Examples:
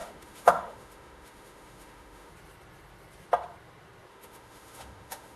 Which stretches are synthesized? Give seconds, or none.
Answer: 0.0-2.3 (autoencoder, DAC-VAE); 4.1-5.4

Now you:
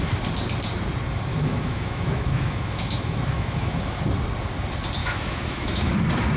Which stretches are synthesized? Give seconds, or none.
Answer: 1.3-4.0 (autoencoder, DAC-VAE); 5.0-5.9

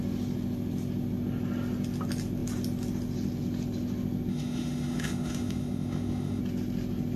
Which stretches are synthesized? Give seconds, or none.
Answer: 4.3-6.4 (autoencoder, DAC-VAE)